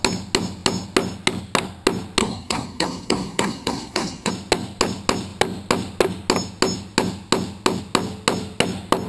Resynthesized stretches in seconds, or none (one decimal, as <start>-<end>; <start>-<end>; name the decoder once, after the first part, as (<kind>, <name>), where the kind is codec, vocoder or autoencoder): 2.2-4.3 (codec, SNAC)